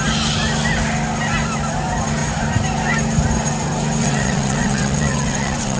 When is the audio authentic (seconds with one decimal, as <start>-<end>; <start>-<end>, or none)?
0.0-4.0